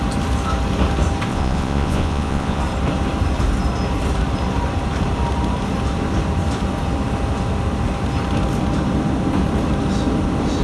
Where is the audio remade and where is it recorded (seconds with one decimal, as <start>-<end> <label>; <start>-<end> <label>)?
0.0-1.3 recorded; 1.3-2.6 remade; 2.6-10.6 recorded